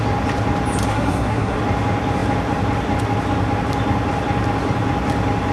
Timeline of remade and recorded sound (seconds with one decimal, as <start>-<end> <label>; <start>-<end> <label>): 0.0-0.9 recorded; 0.9-1.6 remade; 1.6-5.5 recorded